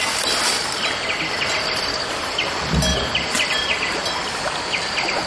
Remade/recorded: recorded